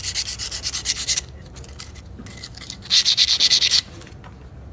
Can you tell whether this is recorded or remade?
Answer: recorded